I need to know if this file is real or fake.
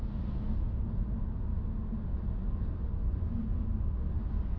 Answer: real